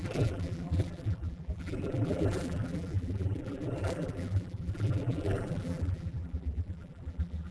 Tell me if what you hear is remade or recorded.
remade